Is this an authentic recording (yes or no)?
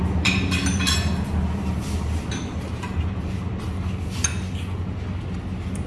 yes